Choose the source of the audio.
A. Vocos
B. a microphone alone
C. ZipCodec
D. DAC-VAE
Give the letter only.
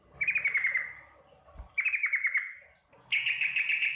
B